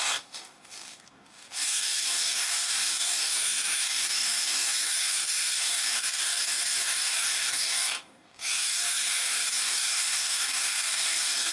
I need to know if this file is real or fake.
fake